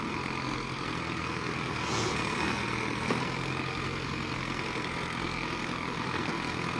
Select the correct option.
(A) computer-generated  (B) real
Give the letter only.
A